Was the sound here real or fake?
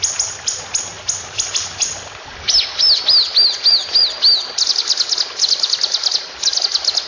real